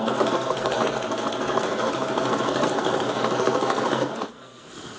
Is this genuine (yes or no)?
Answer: no